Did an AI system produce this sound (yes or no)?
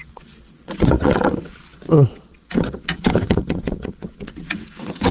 yes